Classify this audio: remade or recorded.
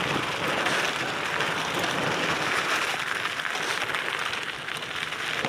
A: recorded